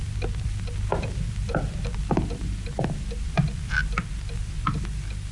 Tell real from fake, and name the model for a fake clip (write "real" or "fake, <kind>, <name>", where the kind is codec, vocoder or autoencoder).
fake, vocoder, BigVGAN v2